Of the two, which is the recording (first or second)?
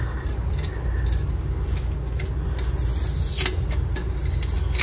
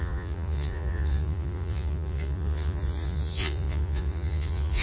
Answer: first